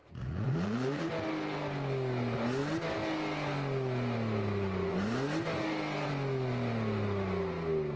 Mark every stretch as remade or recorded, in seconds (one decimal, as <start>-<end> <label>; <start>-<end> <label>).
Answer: 0.0-1.1 remade; 1.1-8.0 recorded